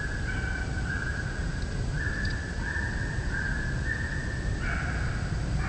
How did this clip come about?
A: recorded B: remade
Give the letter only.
A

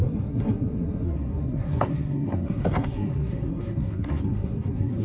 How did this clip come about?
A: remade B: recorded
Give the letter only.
A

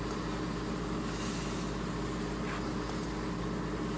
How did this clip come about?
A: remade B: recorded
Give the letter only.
B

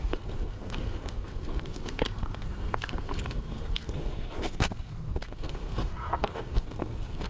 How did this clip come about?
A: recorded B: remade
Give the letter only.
B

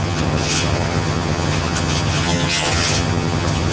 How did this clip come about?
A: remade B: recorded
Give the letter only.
A